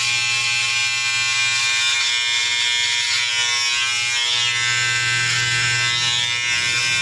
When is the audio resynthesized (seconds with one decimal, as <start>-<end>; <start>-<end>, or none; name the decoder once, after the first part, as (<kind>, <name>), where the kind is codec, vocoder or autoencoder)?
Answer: none